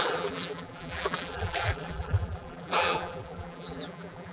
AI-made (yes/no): yes